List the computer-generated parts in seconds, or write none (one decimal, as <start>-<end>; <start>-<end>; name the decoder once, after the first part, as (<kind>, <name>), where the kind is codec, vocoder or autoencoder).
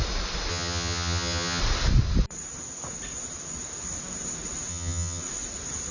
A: 0.5-1.6 (vocoder, HiFi-GAN); 4.7-5.2